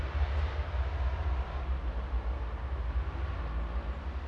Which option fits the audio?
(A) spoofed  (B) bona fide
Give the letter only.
B